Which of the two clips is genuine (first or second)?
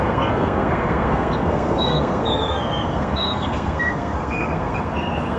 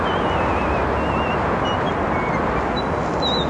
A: second